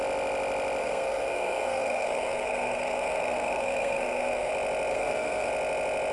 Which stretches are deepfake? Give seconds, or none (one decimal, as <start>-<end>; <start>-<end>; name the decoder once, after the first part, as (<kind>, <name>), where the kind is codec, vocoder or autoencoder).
0.8-4.5 (codec, SNAC); 4.9-5.5